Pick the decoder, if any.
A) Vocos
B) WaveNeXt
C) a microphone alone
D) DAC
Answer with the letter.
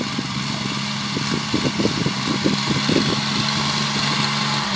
C